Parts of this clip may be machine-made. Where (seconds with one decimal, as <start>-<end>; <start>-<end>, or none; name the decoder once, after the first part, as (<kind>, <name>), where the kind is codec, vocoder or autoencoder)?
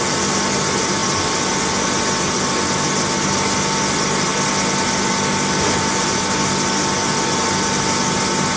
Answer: none